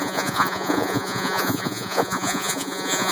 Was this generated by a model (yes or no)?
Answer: yes